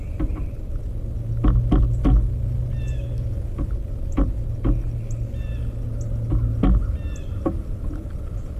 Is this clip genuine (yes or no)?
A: yes